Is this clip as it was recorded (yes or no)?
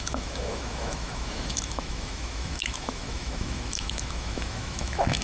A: no